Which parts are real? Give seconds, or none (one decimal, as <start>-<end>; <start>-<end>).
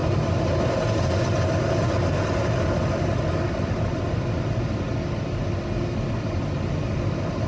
0.0-7.5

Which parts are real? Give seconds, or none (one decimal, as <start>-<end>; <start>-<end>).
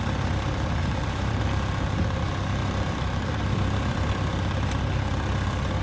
0.0-0.8; 1.4-2.6; 4.1-5.8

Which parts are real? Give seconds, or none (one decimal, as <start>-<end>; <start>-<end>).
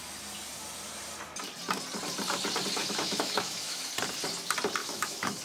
0.0-2.8; 3.9-4.8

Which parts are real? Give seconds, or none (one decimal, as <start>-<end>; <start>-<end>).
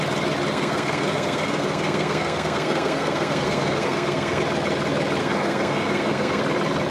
0.0-0.5; 4.4-5.2; 6.4-6.9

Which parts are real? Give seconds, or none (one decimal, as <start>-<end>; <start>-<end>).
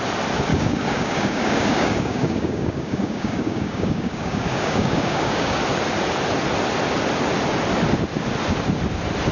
0.0-0.5; 5.6-9.3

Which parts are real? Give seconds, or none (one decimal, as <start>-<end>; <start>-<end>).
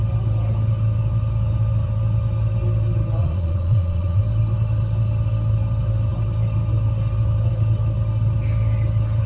0.0-3.2; 4.2-9.3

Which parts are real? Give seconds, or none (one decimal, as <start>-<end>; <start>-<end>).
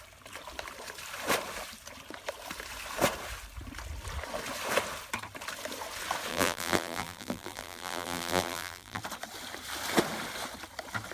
0.0-6.3; 9.0-11.1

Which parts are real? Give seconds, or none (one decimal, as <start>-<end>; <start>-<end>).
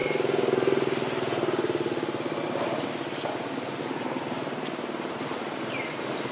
0.0-3.8